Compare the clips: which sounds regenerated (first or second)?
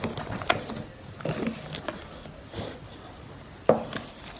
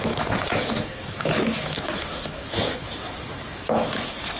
second